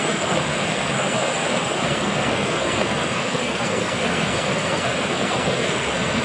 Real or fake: fake